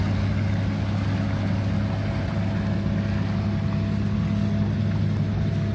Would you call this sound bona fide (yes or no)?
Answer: yes